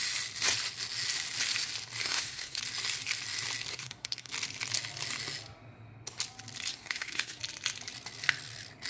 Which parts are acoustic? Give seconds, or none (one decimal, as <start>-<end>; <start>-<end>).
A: 0.0-2.0; 2.6-3.7; 4.3-6.7; 7.4-8.9